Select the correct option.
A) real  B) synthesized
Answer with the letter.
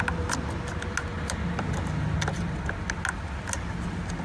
A